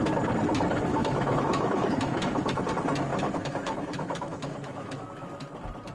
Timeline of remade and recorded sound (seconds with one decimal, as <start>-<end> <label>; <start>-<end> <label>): 0.0-0.9 recorded; 0.9-2.6 remade; 2.6-3.1 recorded; 3.1-5.5 remade; 5.5-5.9 recorded